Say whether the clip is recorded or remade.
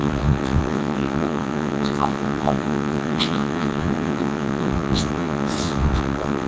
remade